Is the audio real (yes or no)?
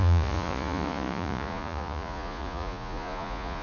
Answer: no